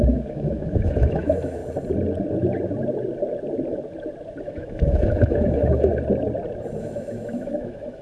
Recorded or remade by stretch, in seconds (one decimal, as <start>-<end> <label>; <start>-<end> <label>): 0.0-1.6 remade; 1.6-4.4 recorded; 4.4-5.9 remade; 5.9-6.8 recorded; 6.8-8.0 remade